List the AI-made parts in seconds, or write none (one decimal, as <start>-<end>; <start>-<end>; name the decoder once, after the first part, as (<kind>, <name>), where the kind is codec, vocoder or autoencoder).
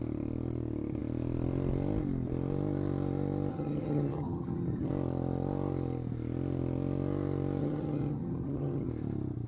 3.5-4.9 (vocoder, HiFi-GAN); 7.6-8.9